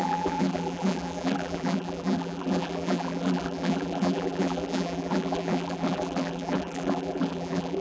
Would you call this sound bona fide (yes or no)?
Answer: no